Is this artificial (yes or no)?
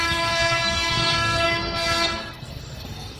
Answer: yes